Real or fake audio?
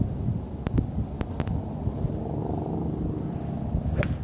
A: real